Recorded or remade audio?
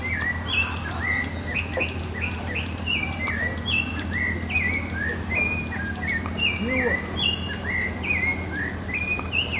recorded